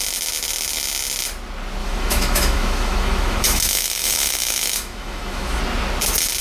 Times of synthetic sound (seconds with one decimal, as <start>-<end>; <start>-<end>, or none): 1.8-5.6